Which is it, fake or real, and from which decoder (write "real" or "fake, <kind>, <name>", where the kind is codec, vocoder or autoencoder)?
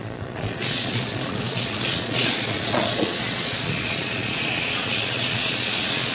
fake, vocoder, Vocos